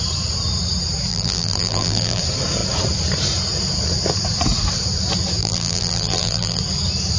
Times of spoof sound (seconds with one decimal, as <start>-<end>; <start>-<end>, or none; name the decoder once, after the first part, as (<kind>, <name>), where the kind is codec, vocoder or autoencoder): 1.1-2.2 (vocoder, BigVGAN v2); 5.4-6.6